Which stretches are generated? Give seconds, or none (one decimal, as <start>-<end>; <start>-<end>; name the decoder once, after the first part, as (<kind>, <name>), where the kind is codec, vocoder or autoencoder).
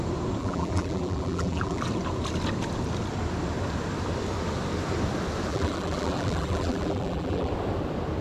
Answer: 0.4-1.8 (vocoder, BigVGAN v2); 5.5-7.5